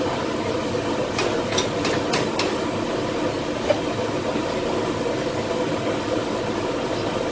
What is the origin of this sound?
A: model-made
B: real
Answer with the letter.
B